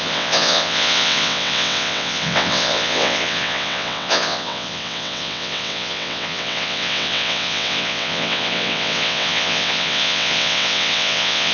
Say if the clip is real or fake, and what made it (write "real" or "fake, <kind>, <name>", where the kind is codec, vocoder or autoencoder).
fake, vocoder, WaveNeXt